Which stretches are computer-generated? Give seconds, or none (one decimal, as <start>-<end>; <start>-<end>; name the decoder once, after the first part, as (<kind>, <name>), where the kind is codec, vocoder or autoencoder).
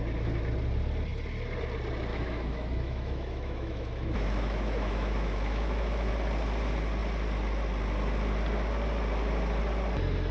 2.1-6.1 (autoencoder, DAC-VAE)